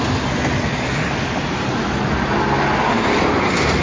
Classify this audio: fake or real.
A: real